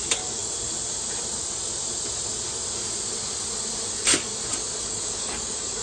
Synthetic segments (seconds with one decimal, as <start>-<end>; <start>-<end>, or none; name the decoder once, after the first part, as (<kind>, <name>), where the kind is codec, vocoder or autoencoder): 0.0-0.4 (codec, DAC); 3.9-4.3; 4.8-5.8